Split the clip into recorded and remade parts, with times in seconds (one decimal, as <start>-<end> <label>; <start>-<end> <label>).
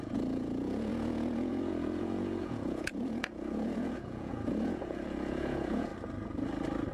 0.0-5.9 remade; 5.9-6.9 recorded